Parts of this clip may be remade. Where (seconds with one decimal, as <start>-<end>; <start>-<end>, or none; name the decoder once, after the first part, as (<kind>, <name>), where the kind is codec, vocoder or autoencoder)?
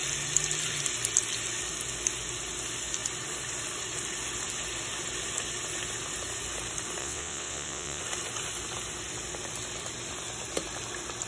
7.0-8.0 (vocoder, WaveNeXt)